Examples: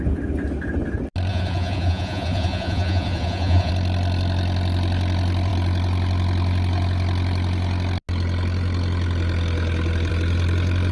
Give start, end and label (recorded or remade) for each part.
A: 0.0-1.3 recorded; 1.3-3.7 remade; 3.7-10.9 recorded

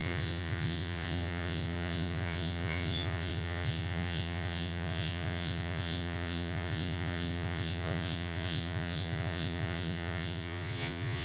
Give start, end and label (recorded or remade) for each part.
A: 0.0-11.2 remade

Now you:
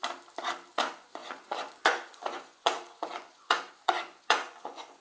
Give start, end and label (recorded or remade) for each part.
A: 0.0-0.7 recorded; 0.7-5.0 remade